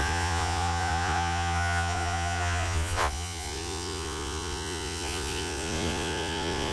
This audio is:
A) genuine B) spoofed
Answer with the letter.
B